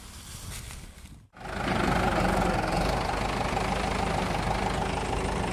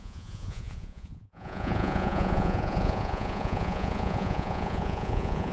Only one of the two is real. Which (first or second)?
first